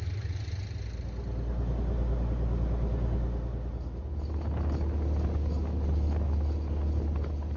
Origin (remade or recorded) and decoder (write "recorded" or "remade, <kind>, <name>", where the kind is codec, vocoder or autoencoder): recorded